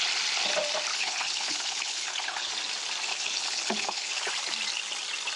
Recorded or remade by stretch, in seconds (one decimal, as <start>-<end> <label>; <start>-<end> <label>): 0.0-0.9 recorded; 0.9-2.5 remade; 2.5-3.1 recorded; 3.1-4.3 remade; 4.3-5.4 recorded

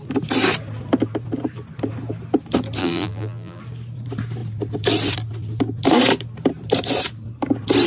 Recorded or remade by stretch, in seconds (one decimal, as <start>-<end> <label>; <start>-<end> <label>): 0.0-2.8 recorded; 2.8-3.6 remade; 3.6-7.9 recorded

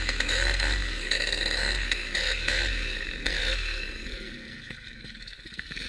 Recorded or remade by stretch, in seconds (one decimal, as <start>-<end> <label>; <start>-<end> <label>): 0.0-5.9 remade